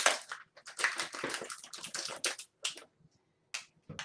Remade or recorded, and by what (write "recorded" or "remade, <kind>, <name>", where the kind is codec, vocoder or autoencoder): recorded